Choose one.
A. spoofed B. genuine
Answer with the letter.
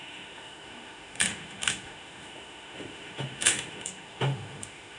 A